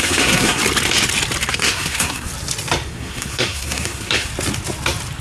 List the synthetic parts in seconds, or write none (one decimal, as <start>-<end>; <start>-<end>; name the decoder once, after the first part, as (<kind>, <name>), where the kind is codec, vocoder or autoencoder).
0.0-0.6 (codec, SNAC); 1.5-2.3; 2.9-4.3